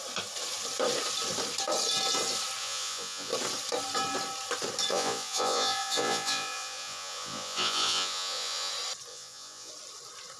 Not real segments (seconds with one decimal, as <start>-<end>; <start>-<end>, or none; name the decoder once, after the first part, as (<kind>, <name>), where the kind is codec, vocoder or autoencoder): 2.6-3.3 (vocoder, Vocos); 4.9-8.7; 9.1-9.7

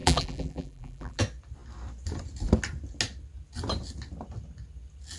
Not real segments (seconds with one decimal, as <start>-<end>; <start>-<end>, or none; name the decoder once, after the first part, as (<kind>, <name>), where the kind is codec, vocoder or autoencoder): 0.0-1.2 (vocoder, BigVGAN v2)